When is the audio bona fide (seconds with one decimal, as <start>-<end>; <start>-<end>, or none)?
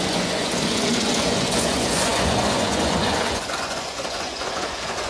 none